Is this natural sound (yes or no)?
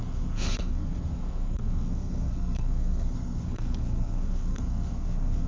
no